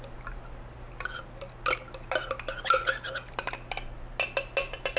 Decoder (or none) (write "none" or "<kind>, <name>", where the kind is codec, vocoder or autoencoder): none